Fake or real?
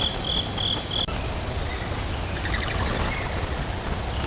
real